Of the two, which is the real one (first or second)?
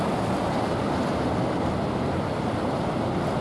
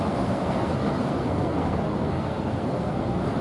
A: first